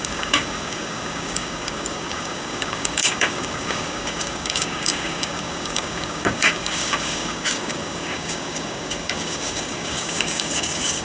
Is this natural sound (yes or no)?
no